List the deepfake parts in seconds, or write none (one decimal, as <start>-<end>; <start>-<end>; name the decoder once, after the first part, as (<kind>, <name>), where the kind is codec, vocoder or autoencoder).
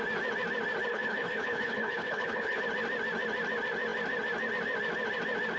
0.9-2.6 (codec, HILCodec)